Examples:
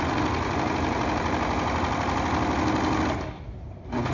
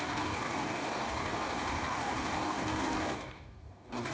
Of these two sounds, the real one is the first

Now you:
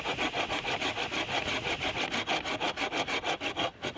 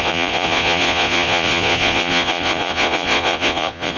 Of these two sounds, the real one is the first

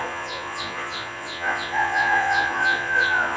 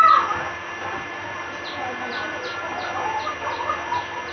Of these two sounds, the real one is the second